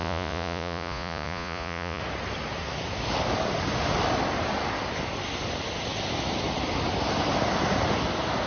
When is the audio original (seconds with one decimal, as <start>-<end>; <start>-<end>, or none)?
2.0-8.5